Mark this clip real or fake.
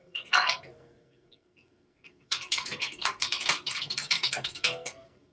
fake